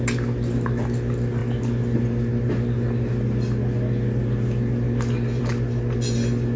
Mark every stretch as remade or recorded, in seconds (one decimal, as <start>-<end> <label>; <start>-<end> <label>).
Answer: 0.0-6.6 recorded